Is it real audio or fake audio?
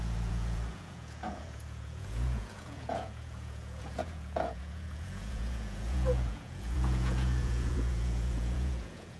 fake